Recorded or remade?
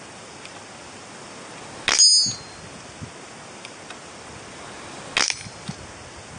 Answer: recorded